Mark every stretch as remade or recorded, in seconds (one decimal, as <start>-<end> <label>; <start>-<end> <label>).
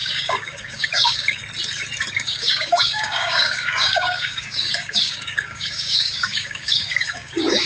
0.0-1.4 remade; 1.4-2.1 recorded; 2.1-7.7 remade